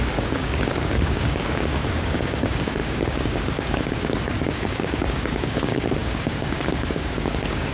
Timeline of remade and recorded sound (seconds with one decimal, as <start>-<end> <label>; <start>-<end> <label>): 0.0-7.7 remade